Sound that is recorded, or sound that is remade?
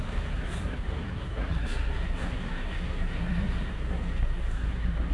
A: remade